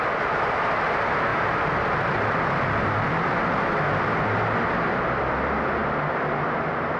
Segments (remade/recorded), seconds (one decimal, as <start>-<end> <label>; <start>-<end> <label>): 0.0-1.3 recorded; 1.3-3.4 remade; 3.4-7.0 recorded